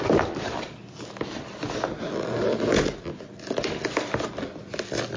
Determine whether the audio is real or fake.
real